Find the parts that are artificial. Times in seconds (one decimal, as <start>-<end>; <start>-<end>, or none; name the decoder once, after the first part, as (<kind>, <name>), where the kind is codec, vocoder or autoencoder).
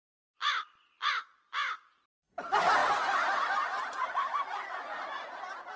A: none